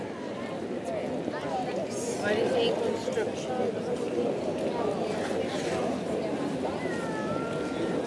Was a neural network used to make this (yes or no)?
no